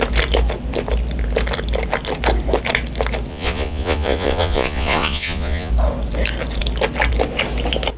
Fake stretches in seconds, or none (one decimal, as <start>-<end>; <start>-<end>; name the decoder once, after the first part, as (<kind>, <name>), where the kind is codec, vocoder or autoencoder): 3.3-5.7 (vocoder, Vocos)